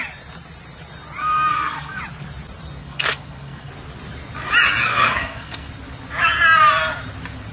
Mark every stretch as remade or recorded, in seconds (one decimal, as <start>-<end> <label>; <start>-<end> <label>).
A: 0.0-1.2 recorded; 1.2-2.0 remade; 2.0-2.8 recorded; 2.8-3.7 remade; 3.7-4.9 recorded; 4.9-5.7 remade; 5.7-7.5 recorded